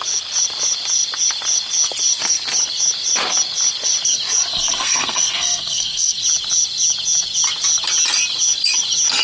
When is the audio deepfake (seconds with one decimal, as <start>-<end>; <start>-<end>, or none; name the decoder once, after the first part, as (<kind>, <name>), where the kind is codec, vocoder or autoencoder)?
4.5-6.2 (codec, SNAC)